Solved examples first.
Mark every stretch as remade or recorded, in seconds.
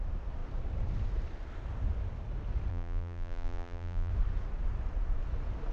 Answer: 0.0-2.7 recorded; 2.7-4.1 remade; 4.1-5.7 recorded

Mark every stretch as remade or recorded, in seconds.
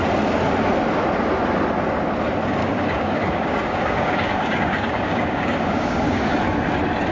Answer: 0.0-2.6 recorded; 2.6-6.3 remade; 6.3-7.1 recorded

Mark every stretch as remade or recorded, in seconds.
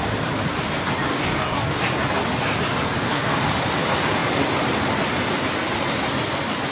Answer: 0.0-1.1 recorded; 1.1-1.8 remade; 1.8-3.0 recorded; 3.0-3.5 remade; 3.5-6.7 recorded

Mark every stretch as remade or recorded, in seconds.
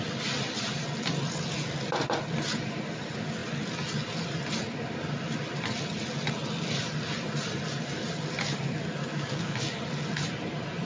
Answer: 0.0-9.1 recorded; 9.1-9.8 remade; 9.8-10.9 recorded